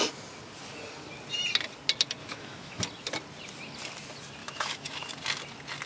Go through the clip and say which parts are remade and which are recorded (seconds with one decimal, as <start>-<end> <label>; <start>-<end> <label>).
0.0-2.2 recorded; 2.2-2.8 remade; 2.8-4.4 recorded; 4.4-5.1 remade; 5.1-5.9 recorded